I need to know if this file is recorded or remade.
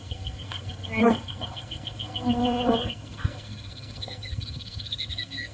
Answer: remade